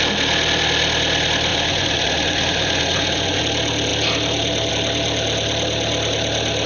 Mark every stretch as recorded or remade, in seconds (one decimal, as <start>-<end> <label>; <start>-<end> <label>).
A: 0.0-1.5 recorded; 1.5-3.4 remade; 3.4-6.7 recorded